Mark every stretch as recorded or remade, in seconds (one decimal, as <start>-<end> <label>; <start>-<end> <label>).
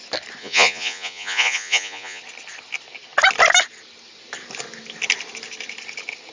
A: 0.0-0.4 recorded; 0.4-2.2 remade; 2.2-6.3 recorded